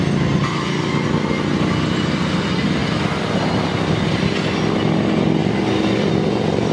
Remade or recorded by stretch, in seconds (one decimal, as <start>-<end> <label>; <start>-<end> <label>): 0.0-6.7 recorded